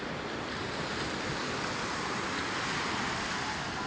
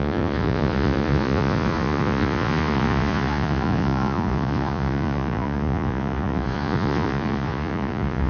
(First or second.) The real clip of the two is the first